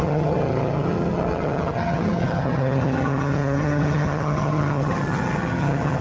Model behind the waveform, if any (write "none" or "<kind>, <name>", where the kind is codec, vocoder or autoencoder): vocoder, HiFi-GAN